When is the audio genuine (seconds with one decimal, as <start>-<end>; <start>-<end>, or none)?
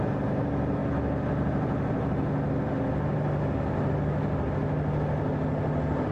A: 0.0-6.1